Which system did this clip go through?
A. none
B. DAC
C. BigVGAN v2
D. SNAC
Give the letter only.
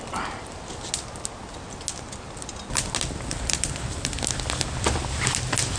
A